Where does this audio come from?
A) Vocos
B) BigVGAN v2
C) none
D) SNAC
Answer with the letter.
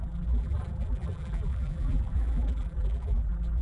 B